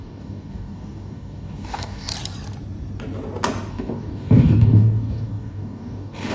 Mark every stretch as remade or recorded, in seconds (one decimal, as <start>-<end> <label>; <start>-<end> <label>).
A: 0.0-2.1 remade; 2.1-3.7 recorded; 3.7-6.3 remade